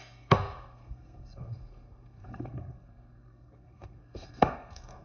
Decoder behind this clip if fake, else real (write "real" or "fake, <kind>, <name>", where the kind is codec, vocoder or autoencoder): fake, codec, SNAC